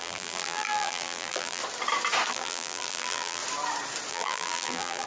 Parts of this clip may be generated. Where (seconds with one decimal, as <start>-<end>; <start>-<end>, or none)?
0.0-1.6; 2.3-3.4; 4.1-5.1